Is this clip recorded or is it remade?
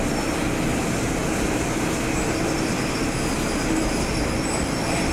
recorded